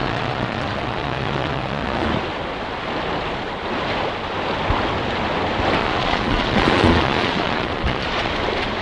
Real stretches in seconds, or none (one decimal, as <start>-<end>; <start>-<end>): 2.1-5.8; 8.3-8.8